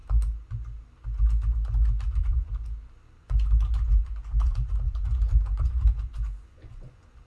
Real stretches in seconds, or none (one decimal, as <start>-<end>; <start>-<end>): 0.0-2.1; 2.5-3.2